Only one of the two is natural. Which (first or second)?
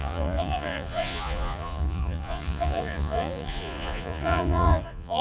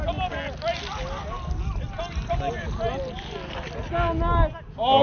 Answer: second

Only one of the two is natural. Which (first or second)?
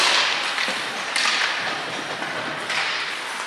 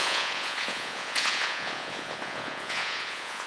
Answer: first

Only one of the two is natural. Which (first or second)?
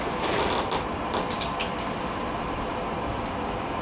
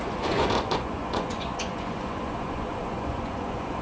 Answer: first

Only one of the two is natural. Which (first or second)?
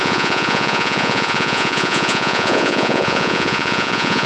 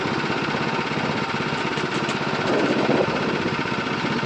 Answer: second